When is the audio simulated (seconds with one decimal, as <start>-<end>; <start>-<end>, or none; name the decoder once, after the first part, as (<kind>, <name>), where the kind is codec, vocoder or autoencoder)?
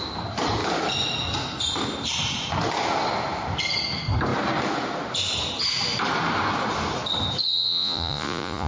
7.5-8.7 (vocoder, Vocos)